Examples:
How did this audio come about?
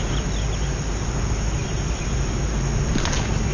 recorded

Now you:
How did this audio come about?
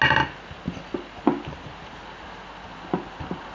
recorded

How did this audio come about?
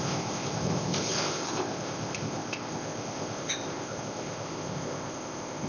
remade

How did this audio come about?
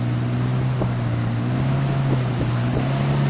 recorded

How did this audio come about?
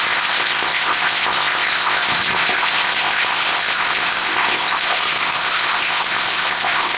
remade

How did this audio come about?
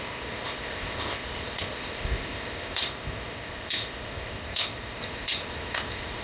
remade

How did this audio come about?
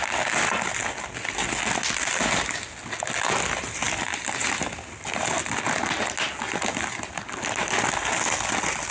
recorded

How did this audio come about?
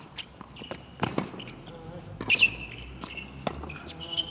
recorded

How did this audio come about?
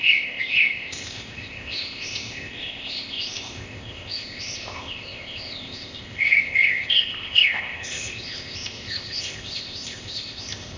remade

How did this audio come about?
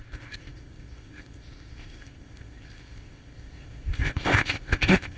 remade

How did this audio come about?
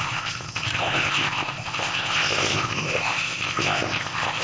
remade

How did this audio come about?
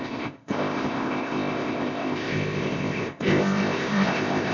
remade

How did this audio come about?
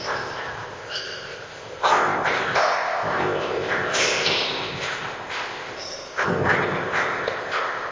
remade